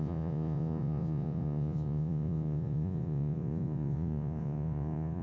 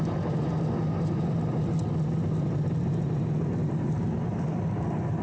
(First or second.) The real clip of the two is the second